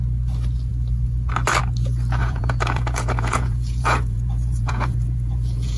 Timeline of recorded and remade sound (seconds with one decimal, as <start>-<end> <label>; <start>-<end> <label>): 0.0-2.2 recorded; 2.2-5.8 remade